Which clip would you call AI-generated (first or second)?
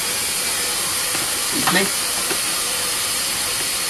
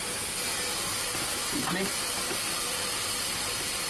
first